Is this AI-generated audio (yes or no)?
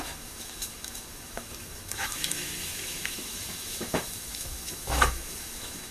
yes